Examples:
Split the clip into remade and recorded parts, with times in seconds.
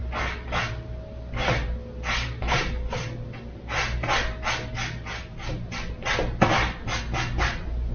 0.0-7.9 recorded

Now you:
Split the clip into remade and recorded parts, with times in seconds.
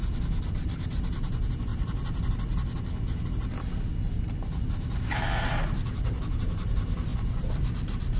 0.0-1.7 recorded; 1.7-2.3 remade; 2.3-7.1 recorded; 7.1-8.2 remade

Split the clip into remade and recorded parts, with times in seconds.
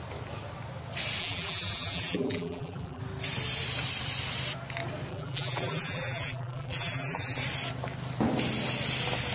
0.0-1.2 recorded; 1.2-3.0 remade; 3.0-5.1 recorded; 5.1-7.4 remade; 7.4-9.3 recorded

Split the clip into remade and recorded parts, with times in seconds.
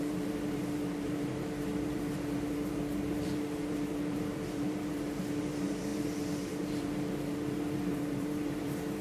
0.0-9.0 remade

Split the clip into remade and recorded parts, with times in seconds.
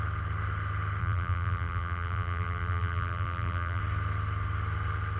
0.0-1.0 recorded; 1.0-3.8 remade; 3.8-5.2 recorded